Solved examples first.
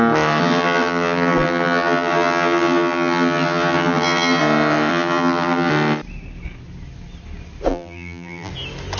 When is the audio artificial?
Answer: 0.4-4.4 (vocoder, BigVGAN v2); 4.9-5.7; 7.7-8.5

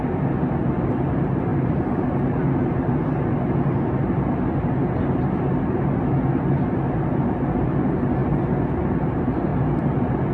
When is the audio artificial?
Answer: 8.2-8.8 (vocoder, BigVGAN v2); 9.5-10.3

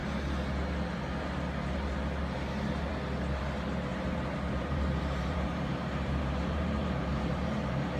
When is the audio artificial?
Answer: 3.9-8.0 (vocoder, BigVGAN v2)